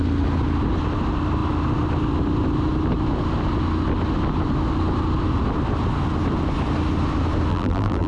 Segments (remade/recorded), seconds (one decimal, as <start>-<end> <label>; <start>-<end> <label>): 0.0-7.5 recorded; 7.5-8.1 remade